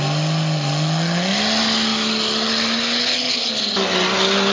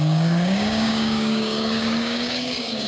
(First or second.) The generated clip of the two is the second